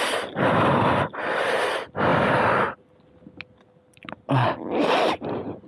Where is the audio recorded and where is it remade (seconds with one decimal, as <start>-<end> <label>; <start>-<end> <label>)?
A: 0.0-5.7 recorded